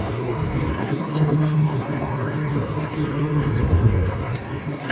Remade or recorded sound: remade